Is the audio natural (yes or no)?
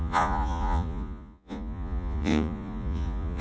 no